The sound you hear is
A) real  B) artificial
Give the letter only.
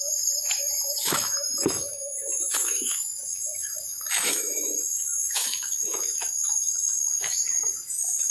B